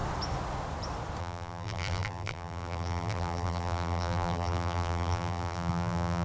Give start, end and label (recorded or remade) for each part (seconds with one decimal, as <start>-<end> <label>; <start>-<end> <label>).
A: 0.0-1.2 recorded; 1.2-6.2 remade